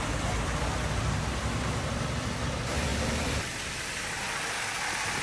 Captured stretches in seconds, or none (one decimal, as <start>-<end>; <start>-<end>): 0.0-5.2